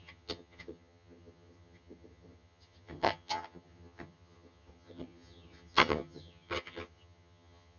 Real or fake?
fake